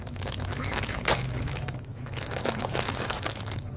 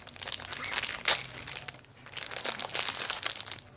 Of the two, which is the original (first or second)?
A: second